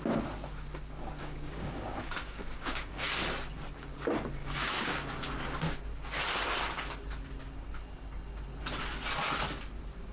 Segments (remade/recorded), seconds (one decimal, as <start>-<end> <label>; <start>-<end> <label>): 0.0-1.2 recorded; 1.2-3.1 remade; 3.1-4.4 recorded; 4.4-4.9 remade; 4.9-10.1 recorded